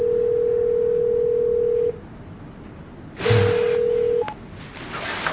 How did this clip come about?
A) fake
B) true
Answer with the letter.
B